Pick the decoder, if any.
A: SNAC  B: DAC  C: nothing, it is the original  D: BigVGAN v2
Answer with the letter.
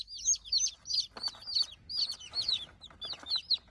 C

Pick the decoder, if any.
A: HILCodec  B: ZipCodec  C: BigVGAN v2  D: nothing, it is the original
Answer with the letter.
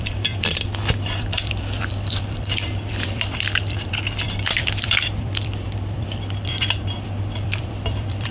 C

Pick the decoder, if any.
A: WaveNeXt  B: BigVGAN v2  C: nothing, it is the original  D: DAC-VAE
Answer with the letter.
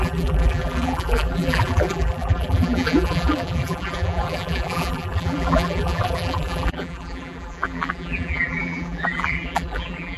B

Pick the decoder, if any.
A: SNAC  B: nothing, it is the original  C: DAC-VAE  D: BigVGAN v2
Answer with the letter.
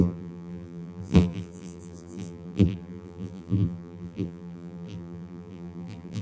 D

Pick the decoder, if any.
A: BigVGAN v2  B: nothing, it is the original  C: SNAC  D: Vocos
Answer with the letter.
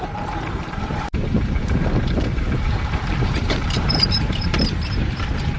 A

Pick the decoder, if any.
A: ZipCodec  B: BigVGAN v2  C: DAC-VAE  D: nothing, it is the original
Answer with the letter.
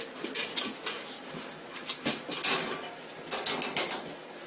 D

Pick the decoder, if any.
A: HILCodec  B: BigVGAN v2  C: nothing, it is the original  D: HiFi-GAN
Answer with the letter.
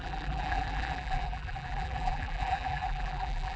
B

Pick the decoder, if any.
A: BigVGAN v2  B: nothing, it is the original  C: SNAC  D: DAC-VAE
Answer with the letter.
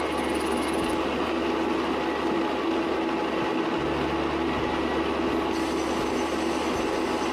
B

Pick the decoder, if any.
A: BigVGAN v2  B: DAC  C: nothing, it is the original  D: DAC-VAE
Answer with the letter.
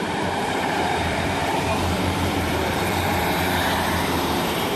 A